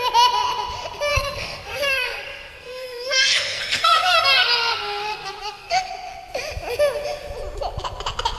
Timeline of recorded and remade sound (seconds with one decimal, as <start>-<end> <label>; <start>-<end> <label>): 0.0-1.1 recorded; 1.1-5.9 remade; 5.9-8.4 recorded